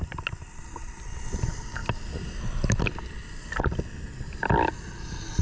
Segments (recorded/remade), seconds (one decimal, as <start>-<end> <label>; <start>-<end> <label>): 0.0-5.4 recorded